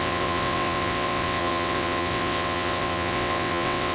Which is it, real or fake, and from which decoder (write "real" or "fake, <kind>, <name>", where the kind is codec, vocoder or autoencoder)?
fake, vocoder, WaveNeXt